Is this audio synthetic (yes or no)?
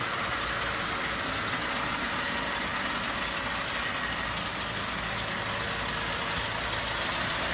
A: no